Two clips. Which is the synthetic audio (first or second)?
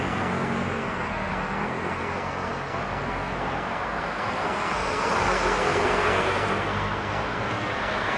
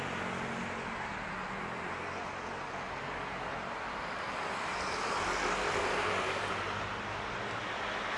first